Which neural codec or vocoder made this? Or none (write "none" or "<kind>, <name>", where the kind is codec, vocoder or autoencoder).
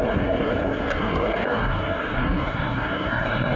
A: codec, SNAC